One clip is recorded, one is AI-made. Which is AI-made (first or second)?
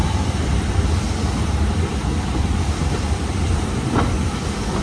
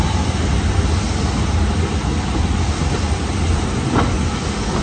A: first